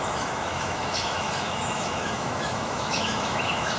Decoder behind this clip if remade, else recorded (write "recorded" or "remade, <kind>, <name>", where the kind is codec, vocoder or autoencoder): remade, autoencoder, DAC-VAE